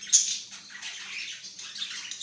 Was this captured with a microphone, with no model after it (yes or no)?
yes